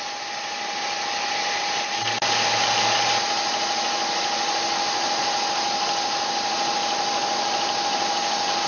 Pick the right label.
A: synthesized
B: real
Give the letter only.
B